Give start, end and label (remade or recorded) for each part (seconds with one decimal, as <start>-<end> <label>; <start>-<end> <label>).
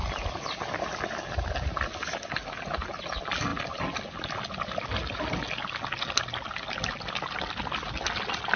0.0-8.6 recorded